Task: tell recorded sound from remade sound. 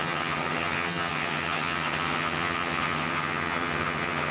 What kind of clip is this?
remade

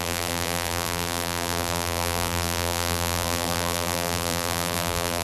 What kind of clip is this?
remade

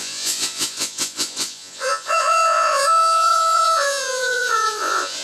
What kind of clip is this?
remade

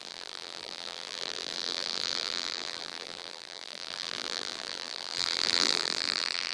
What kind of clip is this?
remade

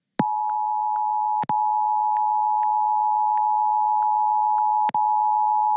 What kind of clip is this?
recorded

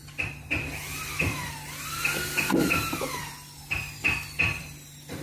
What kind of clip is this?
recorded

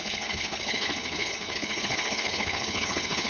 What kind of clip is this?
remade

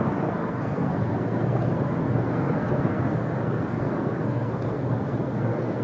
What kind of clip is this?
remade